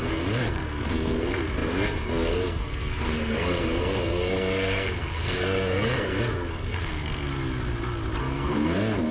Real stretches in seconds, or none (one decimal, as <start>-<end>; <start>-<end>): 7.3-8.2